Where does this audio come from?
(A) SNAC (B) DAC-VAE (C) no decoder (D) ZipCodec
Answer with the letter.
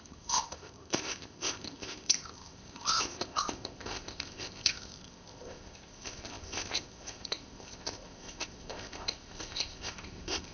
D